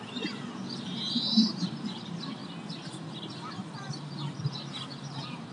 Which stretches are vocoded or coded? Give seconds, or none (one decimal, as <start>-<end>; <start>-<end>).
0.0-2.4; 3.9-5.5